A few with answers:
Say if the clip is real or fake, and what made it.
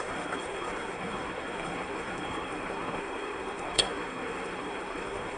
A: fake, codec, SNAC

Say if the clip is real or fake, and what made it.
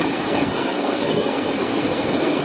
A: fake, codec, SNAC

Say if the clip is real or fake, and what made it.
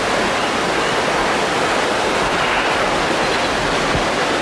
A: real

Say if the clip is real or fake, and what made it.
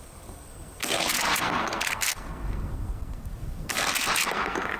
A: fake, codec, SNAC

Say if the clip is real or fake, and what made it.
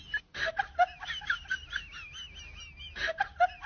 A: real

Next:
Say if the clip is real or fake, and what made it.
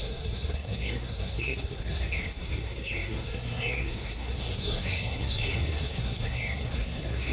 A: fake, codec, SNAC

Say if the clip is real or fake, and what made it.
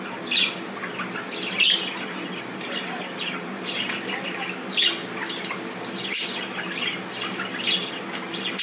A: real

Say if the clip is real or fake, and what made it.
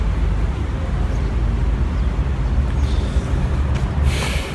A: real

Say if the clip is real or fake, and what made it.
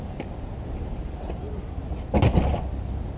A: real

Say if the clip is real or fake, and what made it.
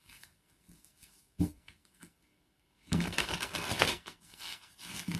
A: fake, codec, SNAC